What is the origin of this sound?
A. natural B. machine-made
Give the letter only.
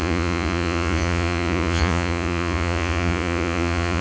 B